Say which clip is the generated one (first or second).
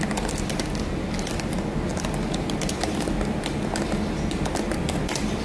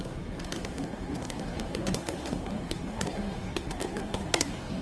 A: second